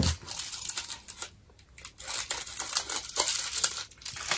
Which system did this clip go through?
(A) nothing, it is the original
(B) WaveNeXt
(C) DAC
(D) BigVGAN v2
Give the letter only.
A